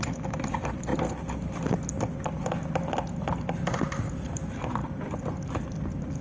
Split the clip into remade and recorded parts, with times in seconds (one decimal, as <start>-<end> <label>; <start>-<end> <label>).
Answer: 0.0-6.2 recorded

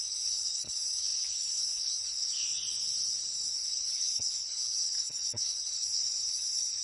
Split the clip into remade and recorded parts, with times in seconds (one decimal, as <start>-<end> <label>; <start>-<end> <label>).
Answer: 0.0-2.5 remade; 2.5-3.5 recorded; 3.5-6.8 remade

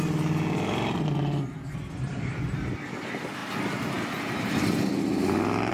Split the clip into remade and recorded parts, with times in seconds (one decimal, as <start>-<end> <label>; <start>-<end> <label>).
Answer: 0.0-5.7 recorded

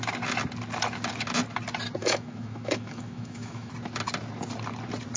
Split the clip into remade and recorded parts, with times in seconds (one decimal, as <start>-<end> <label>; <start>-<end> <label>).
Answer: 0.0-2.0 recorded; 2.0-3.7 remade; 3.7-5.2 recorded

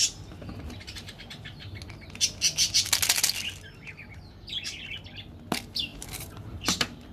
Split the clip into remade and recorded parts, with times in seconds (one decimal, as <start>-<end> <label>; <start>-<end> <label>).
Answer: 0.0-5.9 recorded; 5.9-7.1 remade

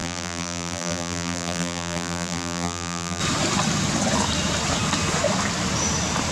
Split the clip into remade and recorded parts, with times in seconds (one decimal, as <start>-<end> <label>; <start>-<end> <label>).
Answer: 0.0-3.2 remade; 3.2-6.3 recorded